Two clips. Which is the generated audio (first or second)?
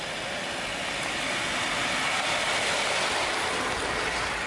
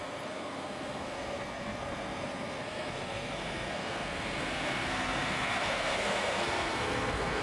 second